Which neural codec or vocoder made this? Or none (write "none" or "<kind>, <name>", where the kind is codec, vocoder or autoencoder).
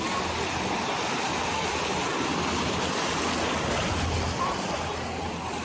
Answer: none